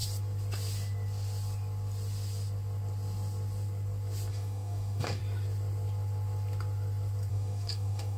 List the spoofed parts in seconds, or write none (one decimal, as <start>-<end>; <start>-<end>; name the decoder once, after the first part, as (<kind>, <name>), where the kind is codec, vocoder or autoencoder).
4.3-5.2 (codec, DAC); 7.3-8.2